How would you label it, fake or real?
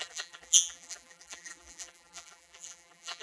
fake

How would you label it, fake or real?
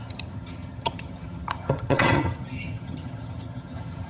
fake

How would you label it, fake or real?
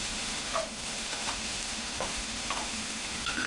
fake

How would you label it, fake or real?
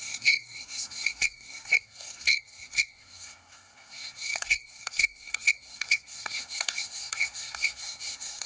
fake